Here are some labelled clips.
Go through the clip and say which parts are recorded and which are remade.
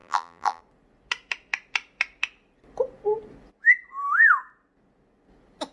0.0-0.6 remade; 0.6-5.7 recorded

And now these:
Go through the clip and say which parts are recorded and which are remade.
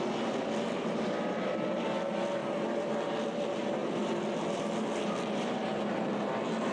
0.0-2.4 recorded; 2.4-3.2 remade; 3.2-6.7 recorded